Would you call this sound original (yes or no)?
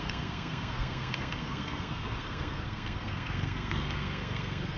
no